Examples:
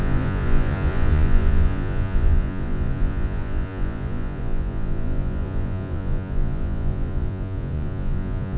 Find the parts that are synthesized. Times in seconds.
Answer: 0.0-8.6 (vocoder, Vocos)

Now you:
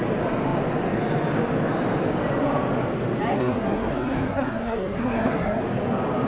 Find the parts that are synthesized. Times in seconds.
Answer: 3.3-5.6 (codec, SNAC)

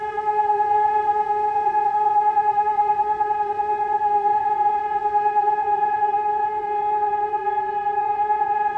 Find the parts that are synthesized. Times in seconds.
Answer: 0.0-7.4 (vocoder, Vocos); 8.0-8.8

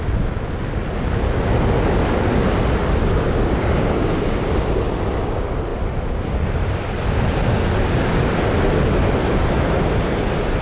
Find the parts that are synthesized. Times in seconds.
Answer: none

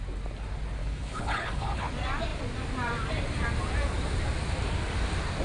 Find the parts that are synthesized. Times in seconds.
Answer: 0.8-1.9 (codec, HILCodec)

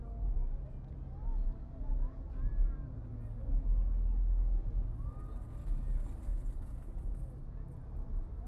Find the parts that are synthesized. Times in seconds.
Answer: 6.3-7.9 (vocoder, Vocos)